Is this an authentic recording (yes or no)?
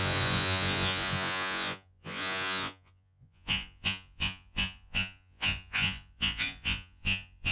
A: no